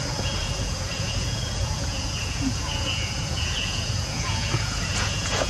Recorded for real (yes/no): no